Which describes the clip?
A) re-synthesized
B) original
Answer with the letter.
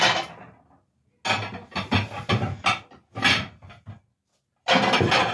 B